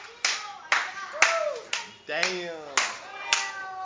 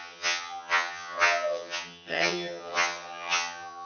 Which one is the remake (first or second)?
second